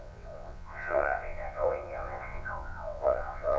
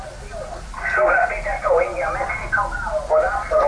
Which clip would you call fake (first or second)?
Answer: first